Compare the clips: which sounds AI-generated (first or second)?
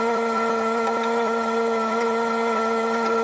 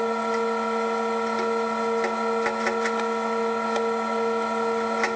first